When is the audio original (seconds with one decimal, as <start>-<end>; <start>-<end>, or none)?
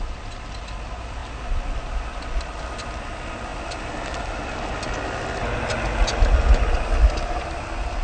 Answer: 0.0-8.0